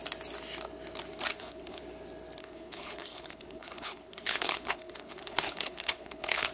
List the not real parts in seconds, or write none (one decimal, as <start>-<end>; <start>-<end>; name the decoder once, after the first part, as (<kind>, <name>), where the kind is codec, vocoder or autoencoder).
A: 1.3-1.8 (codec, HILCodec); 2.4-6.5